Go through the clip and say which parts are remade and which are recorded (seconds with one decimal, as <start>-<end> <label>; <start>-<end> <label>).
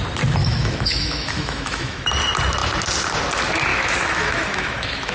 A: 0.0-0.4 recorded; 0.4-2.1 remade; 2.1-3.7 recorded; 3.7-5.1 remade